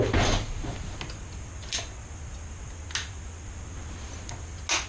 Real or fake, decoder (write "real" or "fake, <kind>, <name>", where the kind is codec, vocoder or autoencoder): real